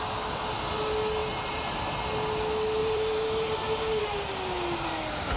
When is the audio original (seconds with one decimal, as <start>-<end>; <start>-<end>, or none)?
0.0-1.2; 1.8-2.8; 4.0-5.4